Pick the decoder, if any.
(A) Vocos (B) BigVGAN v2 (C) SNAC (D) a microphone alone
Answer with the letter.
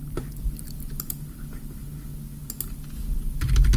D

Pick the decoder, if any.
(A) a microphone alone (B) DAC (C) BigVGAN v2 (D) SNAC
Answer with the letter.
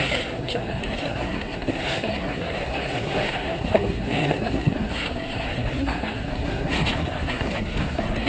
D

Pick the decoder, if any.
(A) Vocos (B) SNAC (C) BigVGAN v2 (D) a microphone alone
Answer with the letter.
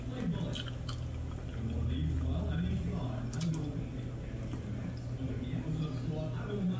D